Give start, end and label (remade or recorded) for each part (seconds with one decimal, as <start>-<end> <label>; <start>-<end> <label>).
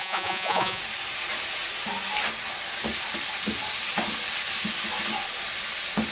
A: 0.0-0.8 remade; 0.8-6.1 recorded